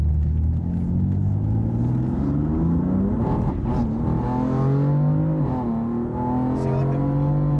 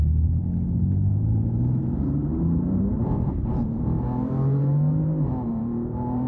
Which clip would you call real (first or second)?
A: first